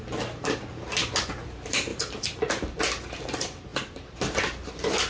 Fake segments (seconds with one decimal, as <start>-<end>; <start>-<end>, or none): none